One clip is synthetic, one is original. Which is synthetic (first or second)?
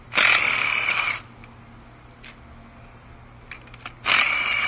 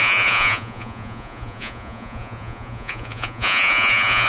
second